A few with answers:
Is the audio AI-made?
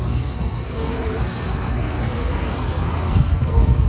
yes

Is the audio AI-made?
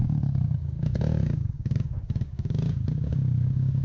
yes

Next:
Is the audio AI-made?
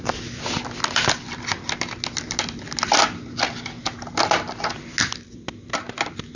no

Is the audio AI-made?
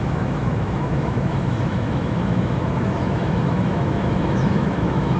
yes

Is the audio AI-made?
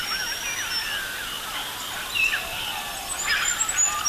no